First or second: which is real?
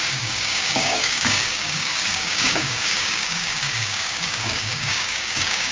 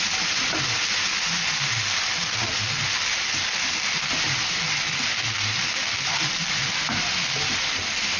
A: second